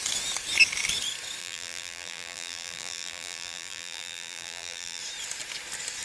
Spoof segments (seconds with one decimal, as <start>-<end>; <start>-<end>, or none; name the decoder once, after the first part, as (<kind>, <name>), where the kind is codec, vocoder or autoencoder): 1.4-5.0 (vocoder, BigVGAN v2)